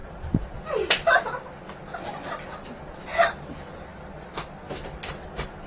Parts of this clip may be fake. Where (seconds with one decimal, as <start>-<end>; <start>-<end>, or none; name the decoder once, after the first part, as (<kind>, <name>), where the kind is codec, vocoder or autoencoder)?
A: none